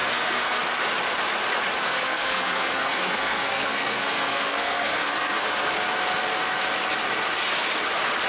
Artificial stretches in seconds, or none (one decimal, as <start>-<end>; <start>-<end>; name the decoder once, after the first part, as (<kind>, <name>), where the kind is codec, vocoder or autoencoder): 0.0-0.6 (codec, SNAC); 1.8-5.5